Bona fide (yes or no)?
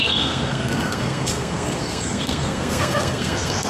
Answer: no